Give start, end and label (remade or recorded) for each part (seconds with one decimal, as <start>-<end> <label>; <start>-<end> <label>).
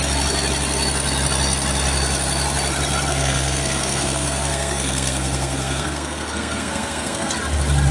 0.0-3.1 recorded; 3.1-7.3 remade; 7.3-7.9 recorded